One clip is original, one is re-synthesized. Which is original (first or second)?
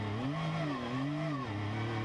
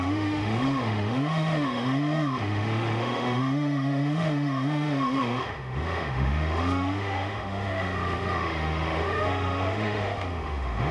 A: first